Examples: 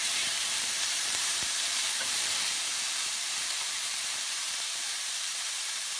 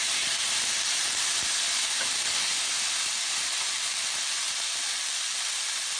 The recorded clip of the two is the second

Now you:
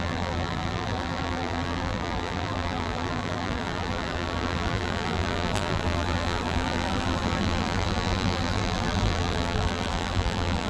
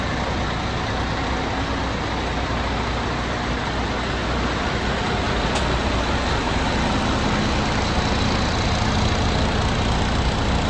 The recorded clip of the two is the second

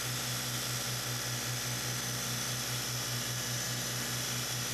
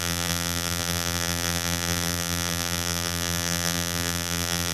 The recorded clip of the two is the first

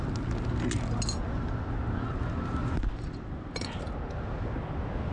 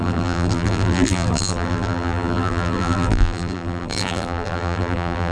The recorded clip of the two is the first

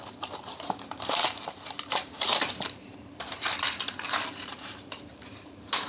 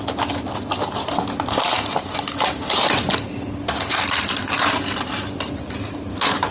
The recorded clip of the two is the second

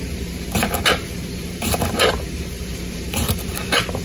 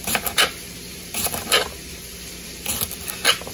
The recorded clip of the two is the second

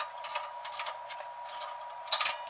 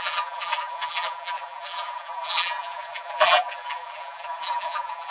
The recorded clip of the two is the first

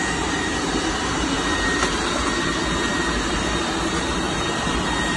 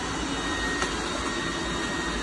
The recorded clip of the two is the second